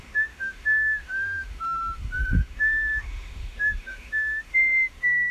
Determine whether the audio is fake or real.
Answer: fake